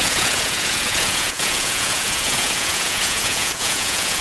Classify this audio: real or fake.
fake